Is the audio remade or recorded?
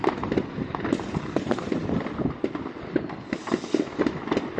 recorded